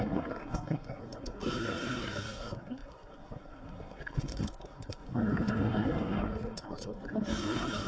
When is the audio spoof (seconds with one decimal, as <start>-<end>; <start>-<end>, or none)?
0.0-7.9